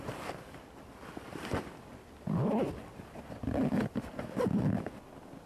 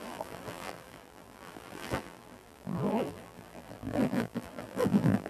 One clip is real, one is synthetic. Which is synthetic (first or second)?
second